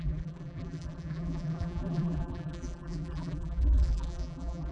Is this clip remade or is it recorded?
remade